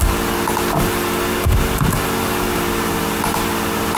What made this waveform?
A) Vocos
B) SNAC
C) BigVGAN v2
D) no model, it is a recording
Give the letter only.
D